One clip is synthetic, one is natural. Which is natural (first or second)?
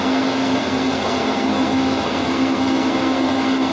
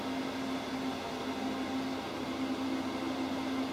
second